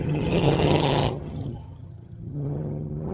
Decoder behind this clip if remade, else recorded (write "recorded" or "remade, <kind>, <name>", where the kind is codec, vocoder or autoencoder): remade, vocoder, HiFi-GAN